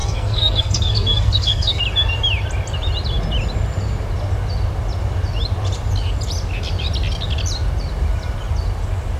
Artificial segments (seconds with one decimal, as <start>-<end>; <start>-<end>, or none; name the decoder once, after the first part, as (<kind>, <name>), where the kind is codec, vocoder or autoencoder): 0.0-1.8 (codec, SNAC)